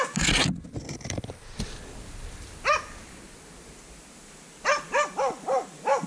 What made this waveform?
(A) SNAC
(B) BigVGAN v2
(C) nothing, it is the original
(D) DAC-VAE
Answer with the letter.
C